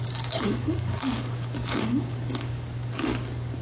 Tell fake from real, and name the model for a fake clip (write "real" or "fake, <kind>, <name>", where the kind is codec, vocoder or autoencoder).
fake, codec, DAC